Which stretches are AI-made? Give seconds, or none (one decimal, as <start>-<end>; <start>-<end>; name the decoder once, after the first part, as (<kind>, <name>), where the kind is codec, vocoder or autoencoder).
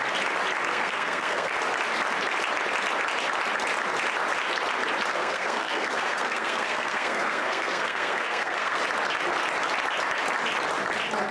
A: 0.7-1.5 (codec, SNAC); 5.1-8.8